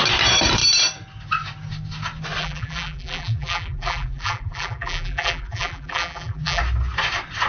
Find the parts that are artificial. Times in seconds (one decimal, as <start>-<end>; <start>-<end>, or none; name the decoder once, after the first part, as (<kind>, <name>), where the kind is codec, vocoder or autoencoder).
2.4-6.6 (vocoder, BigVGAN v2)